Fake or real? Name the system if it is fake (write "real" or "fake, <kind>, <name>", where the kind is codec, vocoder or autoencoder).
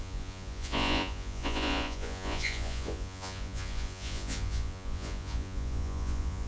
fake, vocoder, Vocos